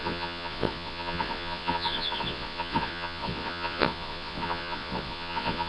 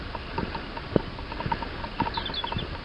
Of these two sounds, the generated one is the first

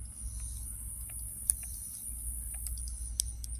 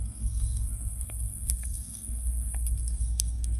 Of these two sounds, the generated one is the second